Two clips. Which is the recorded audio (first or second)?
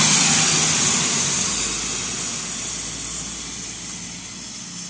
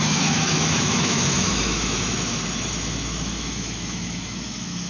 first